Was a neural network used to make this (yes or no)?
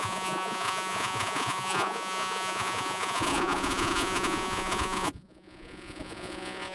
yes